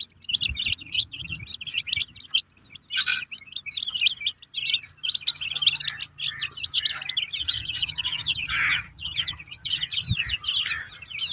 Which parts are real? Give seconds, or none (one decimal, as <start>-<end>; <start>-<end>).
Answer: 0.0-0.8; 1.4-7.4; 9.8-11.3